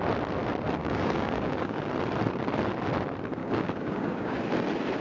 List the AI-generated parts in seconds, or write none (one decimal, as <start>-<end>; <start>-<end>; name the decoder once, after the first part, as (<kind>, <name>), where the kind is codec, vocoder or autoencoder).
0.8-1.9 (codec, DAC); 3.4-4.4